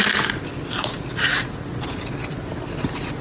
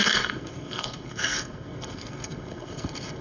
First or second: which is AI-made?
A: second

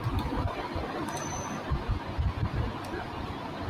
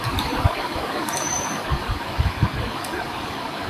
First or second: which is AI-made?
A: second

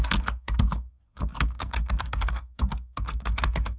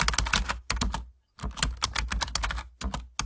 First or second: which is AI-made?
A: first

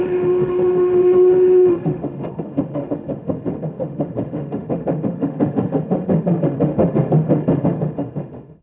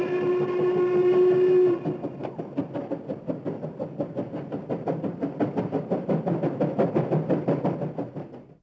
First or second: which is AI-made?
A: first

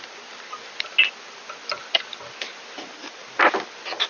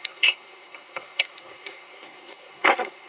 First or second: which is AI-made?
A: second